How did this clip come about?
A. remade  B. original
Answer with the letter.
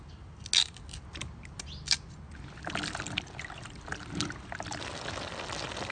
B